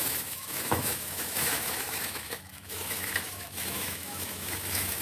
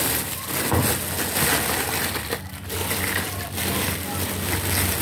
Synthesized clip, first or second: first